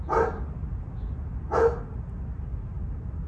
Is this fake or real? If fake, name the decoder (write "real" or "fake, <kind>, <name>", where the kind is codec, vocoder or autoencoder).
real